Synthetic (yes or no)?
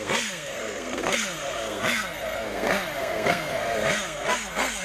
yes